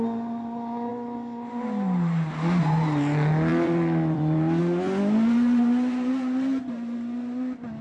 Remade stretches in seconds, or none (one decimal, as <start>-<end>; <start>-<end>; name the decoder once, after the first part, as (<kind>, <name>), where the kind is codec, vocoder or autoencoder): 3.5-4.6 (vocoder, BigVGAN v2)